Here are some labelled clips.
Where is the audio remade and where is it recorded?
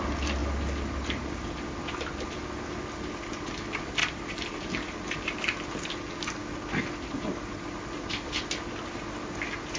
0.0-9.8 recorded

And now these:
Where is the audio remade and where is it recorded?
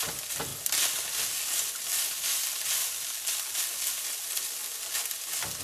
0.0-5.6 recorded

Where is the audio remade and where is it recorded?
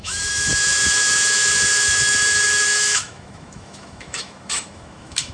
0.0-5.3 remade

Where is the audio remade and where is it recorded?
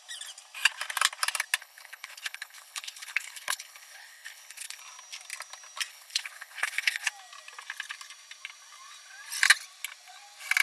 0.0-1.6 recorded; 1.6-4.8 remade; 4.8-5.9 recorded; 5.9-7.1 remade; 7.1-10.6 recorded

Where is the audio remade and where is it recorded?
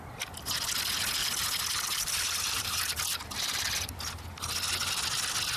0.0-1.2 recorded; 1.2-4.0 remade; 4.0-5.6 recorded